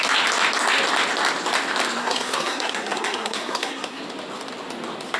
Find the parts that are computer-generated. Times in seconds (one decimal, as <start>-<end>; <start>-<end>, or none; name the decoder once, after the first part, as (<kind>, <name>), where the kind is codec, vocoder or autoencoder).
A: 2.0-4.0 (codec, SNAC)